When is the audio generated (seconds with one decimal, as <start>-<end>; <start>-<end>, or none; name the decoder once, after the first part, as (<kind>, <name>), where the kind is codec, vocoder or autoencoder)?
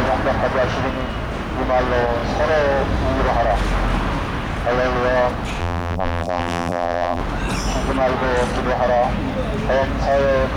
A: 5.6-7.2 (vocoder, BigVGAN v2)